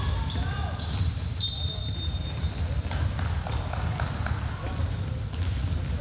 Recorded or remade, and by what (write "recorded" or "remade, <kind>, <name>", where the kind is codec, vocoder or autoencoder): recorded